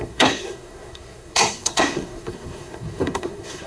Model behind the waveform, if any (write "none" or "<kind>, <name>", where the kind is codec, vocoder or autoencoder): codec, SNAC